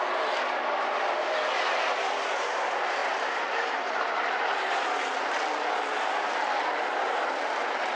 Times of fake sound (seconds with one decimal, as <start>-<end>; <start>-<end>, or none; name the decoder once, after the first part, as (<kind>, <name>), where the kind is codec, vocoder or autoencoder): none